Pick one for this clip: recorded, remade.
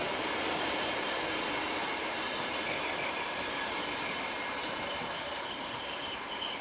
recorded